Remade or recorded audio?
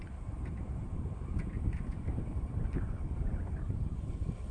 remade